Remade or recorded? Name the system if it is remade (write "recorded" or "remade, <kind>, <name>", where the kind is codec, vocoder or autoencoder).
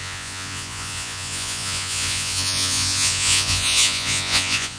remade, vocoder, Vocos